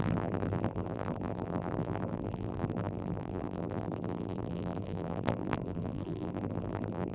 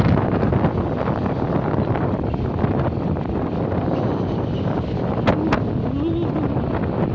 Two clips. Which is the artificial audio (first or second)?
first